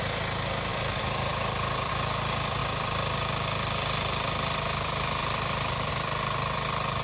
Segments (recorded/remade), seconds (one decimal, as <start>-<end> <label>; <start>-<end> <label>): 0.0-0.7 recorded; 0.7-1.9 remade; 1.9-2.6 recorded; 2.6-5.9 remade; 5.9-7.0 recorded